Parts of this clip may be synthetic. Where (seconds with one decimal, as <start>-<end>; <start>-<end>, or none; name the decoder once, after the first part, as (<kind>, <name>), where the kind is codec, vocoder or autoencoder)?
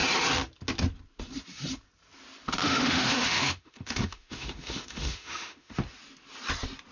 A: 2.6-5.8 (autoencoder, DAC-VAE)